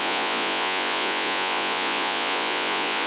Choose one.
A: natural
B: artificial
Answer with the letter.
B